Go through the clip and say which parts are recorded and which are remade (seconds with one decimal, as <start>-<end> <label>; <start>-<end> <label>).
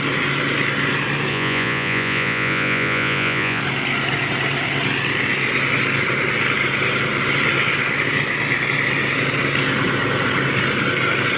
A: 0.0-1.3 recorded; 1.3-3.6 remade; 3.6-11.4 recorded